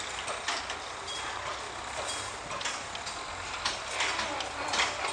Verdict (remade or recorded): recorded